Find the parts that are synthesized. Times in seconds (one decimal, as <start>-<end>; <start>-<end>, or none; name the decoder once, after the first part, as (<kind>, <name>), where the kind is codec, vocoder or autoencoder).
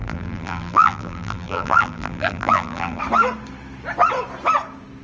0.0-3.0 (vocoder, BigVGAN v2)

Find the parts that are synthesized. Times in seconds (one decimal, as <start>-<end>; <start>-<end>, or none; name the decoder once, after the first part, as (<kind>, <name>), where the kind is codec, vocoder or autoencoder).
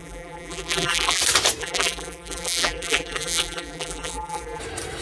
0.0-1.2 (vocoder, BigVGAN v2); 1.6-4.6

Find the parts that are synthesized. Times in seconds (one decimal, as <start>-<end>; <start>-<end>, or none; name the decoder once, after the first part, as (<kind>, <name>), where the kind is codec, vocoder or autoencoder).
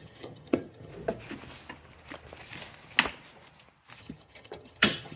0.0-0.9 (vocoder, HiFi-GAN); 4.0-5.2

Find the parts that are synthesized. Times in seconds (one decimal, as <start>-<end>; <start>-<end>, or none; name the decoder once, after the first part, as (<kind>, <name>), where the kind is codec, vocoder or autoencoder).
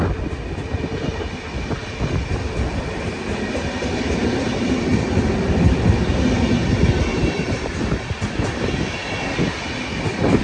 7.1-8.4 (vocoder, BigVGAN v2)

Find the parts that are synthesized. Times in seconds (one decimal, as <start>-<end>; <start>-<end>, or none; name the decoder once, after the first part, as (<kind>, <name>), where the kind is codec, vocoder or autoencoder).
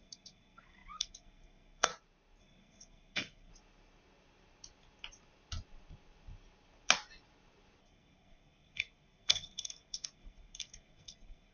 0.0-1.9 (codec, SNAC); 2.4-3.5; 7.8-11.5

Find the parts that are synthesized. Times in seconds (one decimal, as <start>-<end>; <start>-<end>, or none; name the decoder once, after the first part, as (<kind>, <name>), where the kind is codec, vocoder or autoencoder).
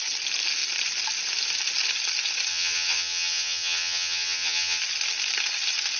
2.5-4.8 (vocoder, HiFi-GAN)